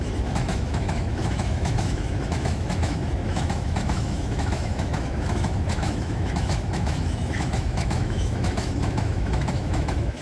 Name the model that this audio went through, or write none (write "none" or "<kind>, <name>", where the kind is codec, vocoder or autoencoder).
autoencoder, DAC-VAE